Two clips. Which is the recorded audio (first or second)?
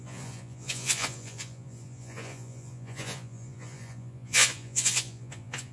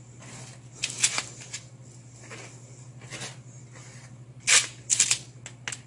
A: second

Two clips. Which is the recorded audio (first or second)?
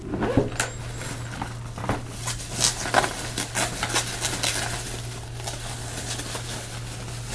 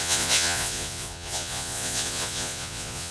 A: first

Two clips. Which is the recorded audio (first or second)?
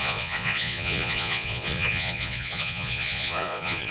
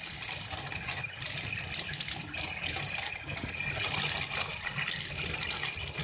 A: second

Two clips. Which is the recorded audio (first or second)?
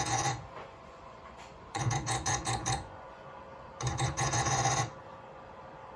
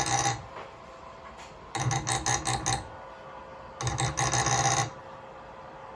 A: second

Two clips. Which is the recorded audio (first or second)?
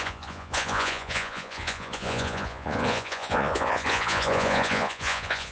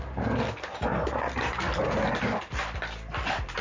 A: second